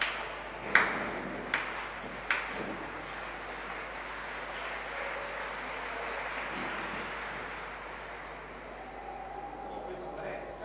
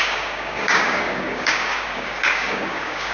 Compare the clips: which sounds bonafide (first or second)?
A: first